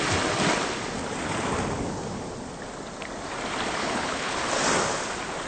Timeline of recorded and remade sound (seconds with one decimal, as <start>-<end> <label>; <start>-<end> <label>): 0.0-3.8 recorded; 3.8-4.4 remade; 4.4-5.5 recorded